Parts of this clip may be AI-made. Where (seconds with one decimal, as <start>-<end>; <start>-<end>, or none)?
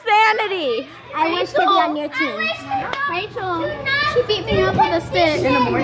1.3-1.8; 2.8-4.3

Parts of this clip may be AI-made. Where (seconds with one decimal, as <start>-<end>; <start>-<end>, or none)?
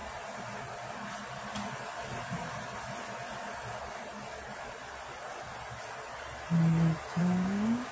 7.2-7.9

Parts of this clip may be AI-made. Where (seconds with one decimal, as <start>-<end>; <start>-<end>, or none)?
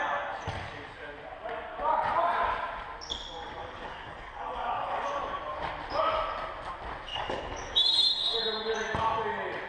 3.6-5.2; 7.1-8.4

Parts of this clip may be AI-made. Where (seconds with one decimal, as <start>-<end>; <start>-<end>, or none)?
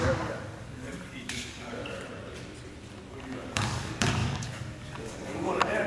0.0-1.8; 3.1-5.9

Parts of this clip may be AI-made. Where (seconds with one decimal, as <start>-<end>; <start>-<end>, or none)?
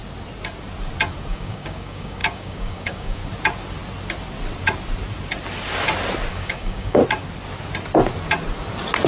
1.3-3.2; 6.3-7.0